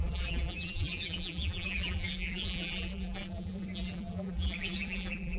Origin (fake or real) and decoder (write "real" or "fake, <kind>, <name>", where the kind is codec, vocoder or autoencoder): fake, vocoder, BigVGAN v2